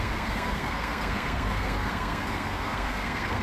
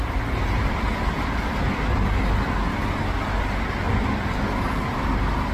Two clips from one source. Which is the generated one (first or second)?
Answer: first